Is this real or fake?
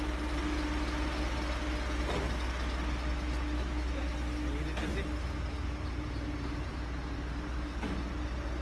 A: real